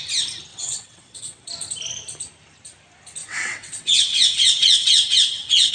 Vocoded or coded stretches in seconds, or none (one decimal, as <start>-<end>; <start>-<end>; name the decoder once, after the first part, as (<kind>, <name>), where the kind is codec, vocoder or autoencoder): 0.5-1.5 (vocoder, WaveNeXt); 3.2-5.7